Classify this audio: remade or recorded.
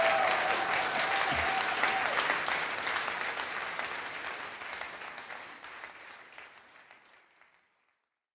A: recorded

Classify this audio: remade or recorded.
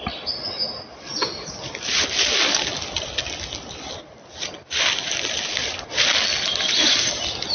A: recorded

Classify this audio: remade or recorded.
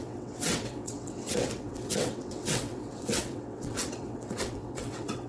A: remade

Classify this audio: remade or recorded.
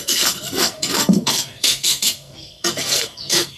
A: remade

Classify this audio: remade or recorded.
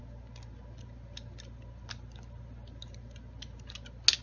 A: recorded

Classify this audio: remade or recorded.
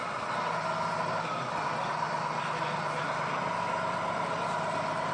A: recorded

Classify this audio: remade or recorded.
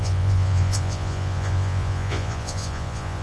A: remade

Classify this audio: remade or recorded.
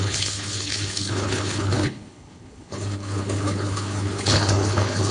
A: remade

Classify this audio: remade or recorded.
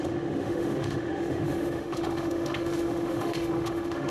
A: remade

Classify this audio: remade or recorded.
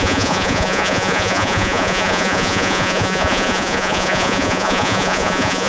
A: remade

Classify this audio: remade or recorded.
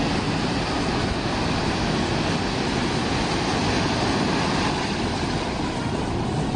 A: recorded